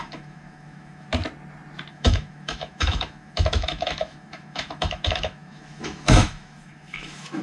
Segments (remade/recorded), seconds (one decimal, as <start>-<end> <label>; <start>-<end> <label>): 0.0-1.1 remade; 1.1-1.9 recorded; 1.9-7.4 remade